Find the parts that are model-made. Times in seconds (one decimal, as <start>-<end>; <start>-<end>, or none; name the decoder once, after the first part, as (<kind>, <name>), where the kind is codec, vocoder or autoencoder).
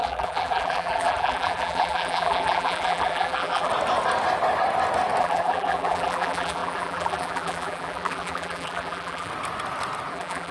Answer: 0.0-3.7 (vocoder, BigVGAN v2); 5.2-9.3; 10.1-10.5